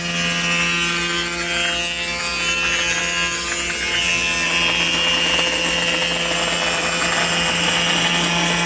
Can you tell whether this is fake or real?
real